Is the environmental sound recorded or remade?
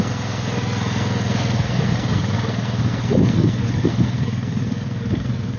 remade